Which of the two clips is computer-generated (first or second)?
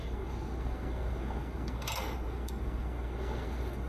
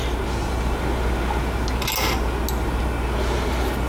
first